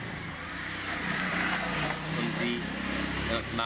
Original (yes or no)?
yes